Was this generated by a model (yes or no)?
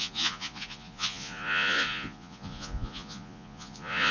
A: yes